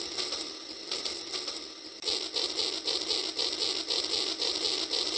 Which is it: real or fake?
real